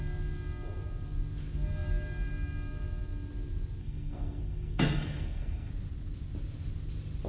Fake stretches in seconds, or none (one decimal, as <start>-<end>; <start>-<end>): 3.8-5.7